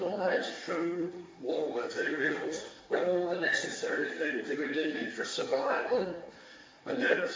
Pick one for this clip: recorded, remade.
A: remade